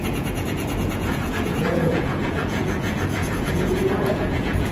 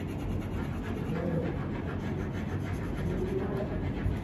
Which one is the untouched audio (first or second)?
second